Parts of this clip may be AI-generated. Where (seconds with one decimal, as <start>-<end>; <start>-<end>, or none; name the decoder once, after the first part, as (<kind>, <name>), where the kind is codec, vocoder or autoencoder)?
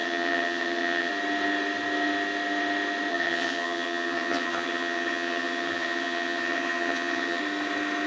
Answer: 0.0-1.1 (vocoder, HiFi-GAN); 3.1-7.4